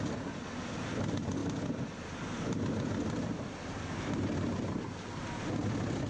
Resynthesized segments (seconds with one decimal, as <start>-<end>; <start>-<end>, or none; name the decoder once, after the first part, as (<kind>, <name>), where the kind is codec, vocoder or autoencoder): none

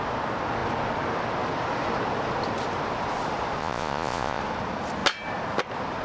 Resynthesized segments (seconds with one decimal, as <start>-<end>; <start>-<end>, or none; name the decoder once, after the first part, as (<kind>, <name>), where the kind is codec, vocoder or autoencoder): 3.6-4.4 (vocoder, Vocos)

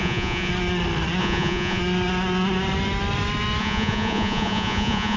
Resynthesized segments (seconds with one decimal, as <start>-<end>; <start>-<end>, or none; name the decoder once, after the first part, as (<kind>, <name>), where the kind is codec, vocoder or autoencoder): 0.0-0.5 (vocoder, Vocos); 1.2-1.8; 3.6-5.2

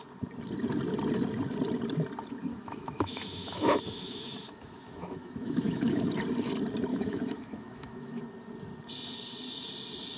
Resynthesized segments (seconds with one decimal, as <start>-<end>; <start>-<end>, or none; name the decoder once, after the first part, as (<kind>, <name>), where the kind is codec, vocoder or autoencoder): 2.5-6.1 (autoencoder, DAC-VAE); 6.9-8.2